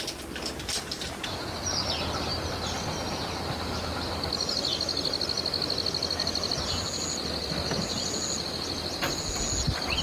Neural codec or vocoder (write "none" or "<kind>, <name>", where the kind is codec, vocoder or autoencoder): none